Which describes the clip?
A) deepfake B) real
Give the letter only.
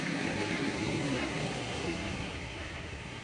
A